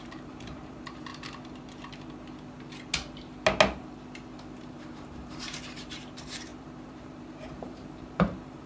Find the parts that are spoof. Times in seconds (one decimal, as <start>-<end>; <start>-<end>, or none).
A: 0.0-1.1; 4.6-8.7